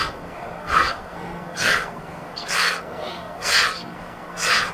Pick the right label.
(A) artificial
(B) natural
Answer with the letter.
A